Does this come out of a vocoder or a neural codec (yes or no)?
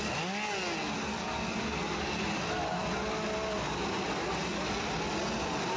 no